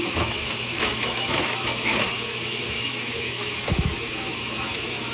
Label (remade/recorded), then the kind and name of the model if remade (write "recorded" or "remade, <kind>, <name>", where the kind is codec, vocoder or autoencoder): remade, autoencoder, DAC-VAE